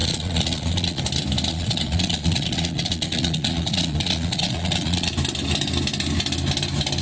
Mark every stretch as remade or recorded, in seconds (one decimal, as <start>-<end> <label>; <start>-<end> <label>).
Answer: 0.0-1.0 remade; 1.0-1.5 recorded; 1.5-5.1 remade; 5.1-7.0 recorded